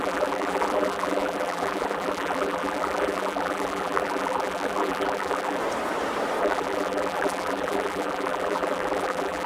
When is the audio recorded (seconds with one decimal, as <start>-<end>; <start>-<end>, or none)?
5.6-6.4